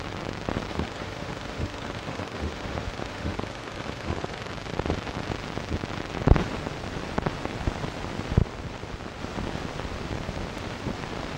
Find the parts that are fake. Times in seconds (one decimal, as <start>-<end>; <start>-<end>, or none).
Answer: 0.7-4.5